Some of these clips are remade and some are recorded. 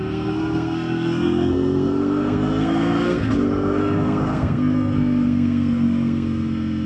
remade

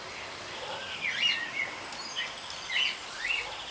remade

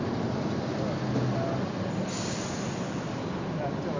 recorded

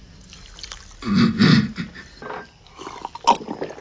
recorded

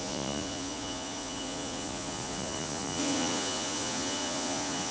remade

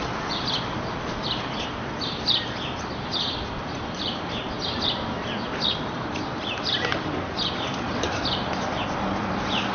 remade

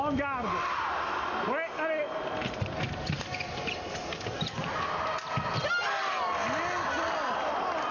recorded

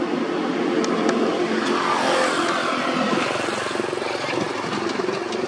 recorded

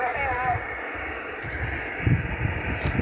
recorded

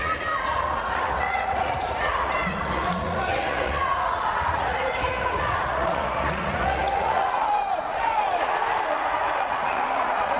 remade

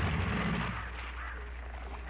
recorded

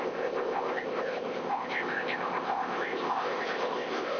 remade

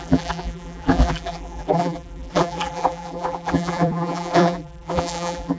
remade